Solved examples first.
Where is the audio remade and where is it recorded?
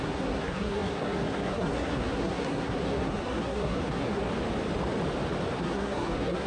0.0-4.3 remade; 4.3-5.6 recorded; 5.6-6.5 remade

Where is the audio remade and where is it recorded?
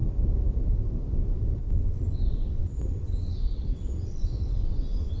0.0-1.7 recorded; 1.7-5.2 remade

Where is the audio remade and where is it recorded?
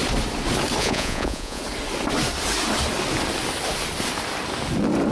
0.0-0.8 recorded; 0.8-1.6 remade; 1.6-5.1 recorded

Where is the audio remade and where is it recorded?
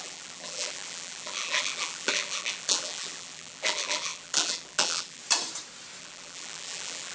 0.0-5.2 remade; 5.2-6.0 recorded; 6.0-7.1 remade